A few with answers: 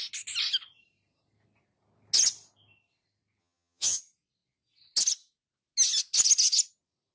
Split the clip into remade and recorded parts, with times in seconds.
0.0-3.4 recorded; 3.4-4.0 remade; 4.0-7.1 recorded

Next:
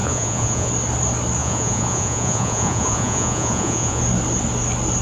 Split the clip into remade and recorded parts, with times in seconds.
0.0-0.7 remade; 0.7-1.4 recorded; 1.4-4.0 remade; 4.0-5.0 recorded

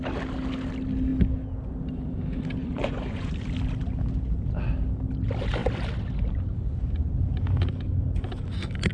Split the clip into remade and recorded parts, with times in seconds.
0.0-2.6 recorded; 2.6-3.3 remade; 3.3-8.9 recorded

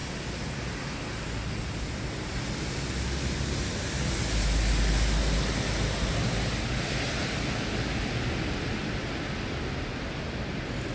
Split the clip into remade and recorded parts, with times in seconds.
0.0-10.9 recorded